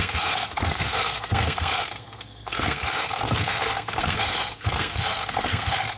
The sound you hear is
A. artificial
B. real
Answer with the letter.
A